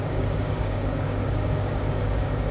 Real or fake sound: fake